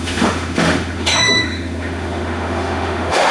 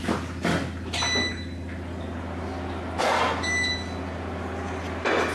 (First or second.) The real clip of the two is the second